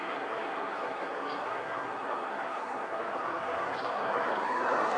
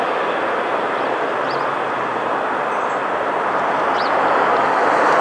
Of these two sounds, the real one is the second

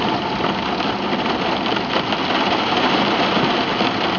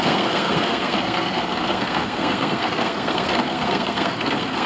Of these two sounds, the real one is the first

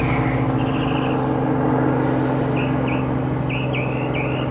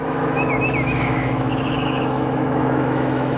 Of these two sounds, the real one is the first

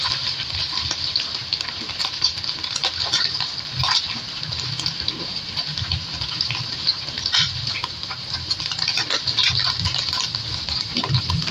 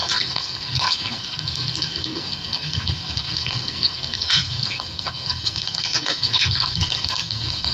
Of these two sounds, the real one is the first